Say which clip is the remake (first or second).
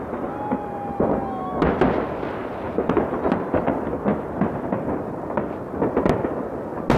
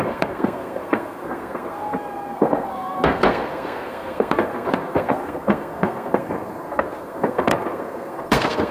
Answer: second